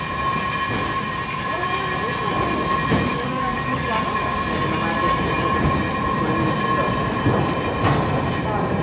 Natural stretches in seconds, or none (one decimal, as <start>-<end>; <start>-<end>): 0.0-3.1; 3.9-8.8